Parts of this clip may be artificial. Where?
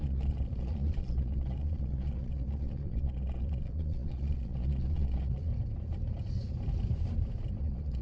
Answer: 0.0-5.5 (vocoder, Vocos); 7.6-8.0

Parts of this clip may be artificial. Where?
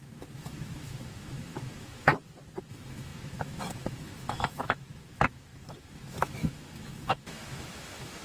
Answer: 0.0-2.1 (autoencoder, DAC-VAE); 2.7-8.2